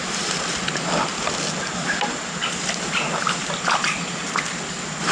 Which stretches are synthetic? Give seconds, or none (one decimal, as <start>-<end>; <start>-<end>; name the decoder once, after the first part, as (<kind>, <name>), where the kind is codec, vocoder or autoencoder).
0.0-1.1 (vocoder, BigVGAN v2); 3.8-5.1